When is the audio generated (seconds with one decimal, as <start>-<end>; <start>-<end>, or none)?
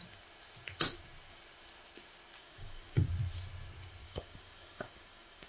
2.4-3.1; 4.0-5.5